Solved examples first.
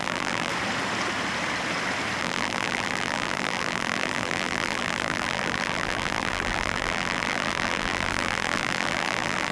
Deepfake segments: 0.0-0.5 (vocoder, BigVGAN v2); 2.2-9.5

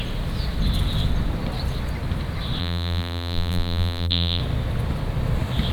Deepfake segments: 2.6-4.4 (vocoder, BigVGAN v2)